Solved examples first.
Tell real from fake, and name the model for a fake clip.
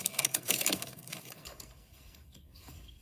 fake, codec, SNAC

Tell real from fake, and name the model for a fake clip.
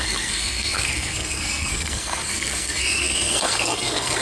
fake, codec, SNAC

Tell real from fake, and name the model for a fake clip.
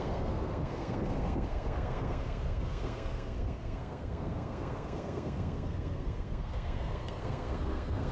fake, codec, SNAC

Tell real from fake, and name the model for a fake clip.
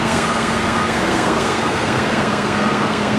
fake, codec, SNAC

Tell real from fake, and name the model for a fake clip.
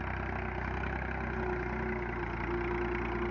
real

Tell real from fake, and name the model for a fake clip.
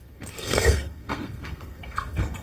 fake, codec, SNAC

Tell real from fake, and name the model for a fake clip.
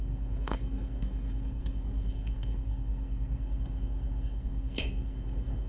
fake, codec, SNAC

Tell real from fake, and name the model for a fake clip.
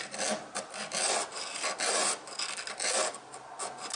real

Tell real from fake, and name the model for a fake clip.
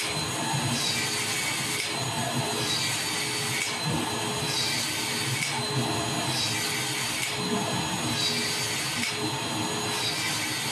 real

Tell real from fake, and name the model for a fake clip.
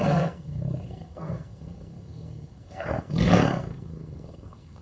fake, codec, SNAC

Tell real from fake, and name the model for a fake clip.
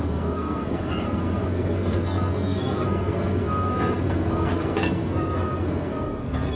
fake, codec, SNAC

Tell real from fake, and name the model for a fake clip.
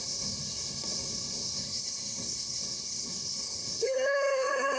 fake, codec, SNAC